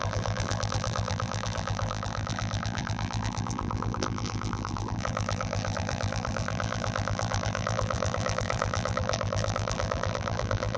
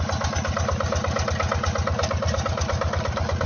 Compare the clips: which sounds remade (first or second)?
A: first